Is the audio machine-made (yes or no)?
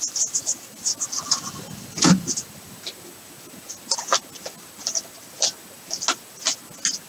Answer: no